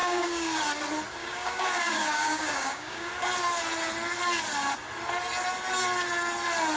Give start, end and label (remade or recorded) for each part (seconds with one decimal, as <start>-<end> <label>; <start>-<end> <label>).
0.0-0.6 remade; 0.6-1.2 recorded; 1.2-3.1 remade; 3.1-6.8 recorded